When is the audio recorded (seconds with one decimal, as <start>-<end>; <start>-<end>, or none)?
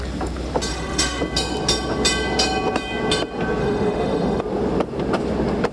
0.0-0.7; 1.2-3.6; 4.4-5.7